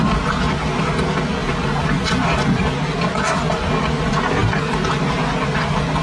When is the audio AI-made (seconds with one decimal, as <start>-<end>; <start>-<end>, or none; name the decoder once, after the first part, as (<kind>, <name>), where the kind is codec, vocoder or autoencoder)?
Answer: none